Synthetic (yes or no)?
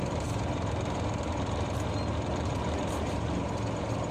yes